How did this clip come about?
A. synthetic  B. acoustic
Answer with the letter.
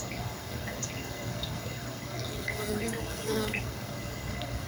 A